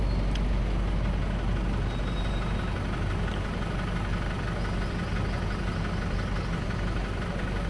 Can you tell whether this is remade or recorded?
recorded